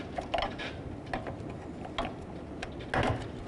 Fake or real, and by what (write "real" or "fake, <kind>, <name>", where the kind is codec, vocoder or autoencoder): real